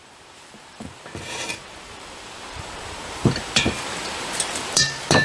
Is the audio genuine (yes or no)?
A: no